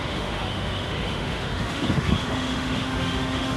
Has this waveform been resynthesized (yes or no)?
yes